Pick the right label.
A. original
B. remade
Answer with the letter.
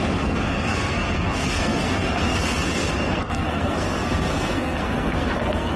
B